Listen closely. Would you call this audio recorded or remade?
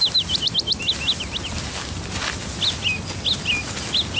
recorded